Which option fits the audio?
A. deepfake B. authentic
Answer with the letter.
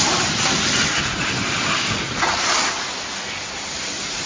B